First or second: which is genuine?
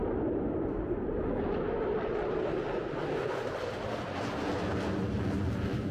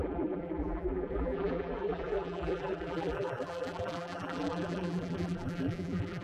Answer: first